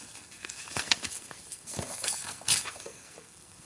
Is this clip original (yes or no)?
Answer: no